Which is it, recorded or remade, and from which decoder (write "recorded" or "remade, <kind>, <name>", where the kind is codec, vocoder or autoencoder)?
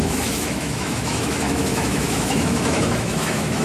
remade, autoencoder, DAC-VAE